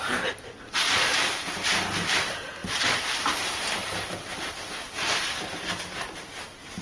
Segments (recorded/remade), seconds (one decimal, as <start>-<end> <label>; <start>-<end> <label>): 0.0-6.8 remade